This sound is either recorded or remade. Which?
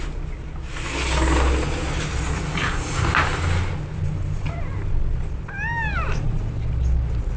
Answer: recorded